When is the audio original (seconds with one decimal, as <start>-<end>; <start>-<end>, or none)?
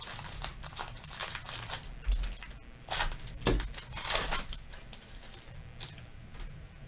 1.2-3.9; 5.3-6.1